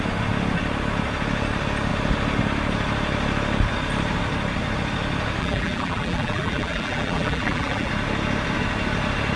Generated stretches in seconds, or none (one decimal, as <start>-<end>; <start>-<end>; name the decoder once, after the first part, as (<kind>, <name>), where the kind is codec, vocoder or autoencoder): 5.4-7.9 (vocoder, BigVGAN v2)